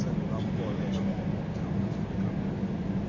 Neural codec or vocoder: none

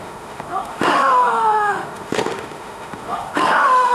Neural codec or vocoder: autoencoder, DAC-VAE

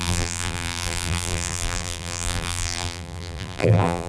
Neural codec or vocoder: vocoder, BigVGAN v2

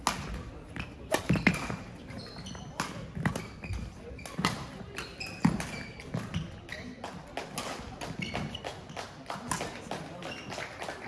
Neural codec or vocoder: none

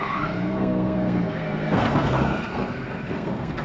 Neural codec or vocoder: codec, SNAC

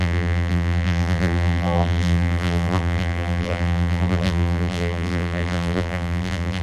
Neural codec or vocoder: vocoder, BigVGAN v2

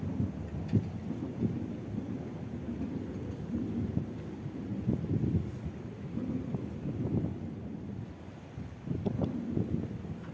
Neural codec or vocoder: none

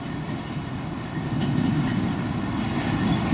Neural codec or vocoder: none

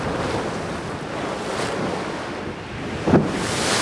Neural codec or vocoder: none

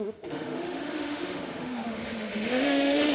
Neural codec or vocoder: autoencoder, DAC-VAE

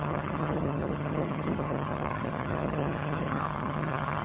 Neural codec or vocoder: vocoder, HiFi-GAN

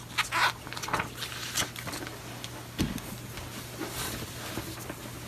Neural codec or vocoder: none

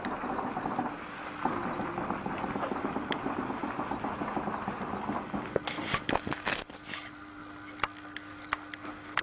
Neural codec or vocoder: none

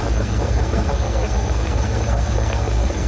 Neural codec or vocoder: codec, SNAC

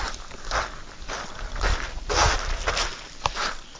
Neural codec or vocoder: none